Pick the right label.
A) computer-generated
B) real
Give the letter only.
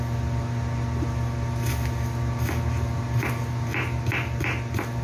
B